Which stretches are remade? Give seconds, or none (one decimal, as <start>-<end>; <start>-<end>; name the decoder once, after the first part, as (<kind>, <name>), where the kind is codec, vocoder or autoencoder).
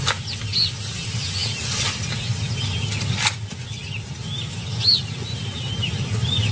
none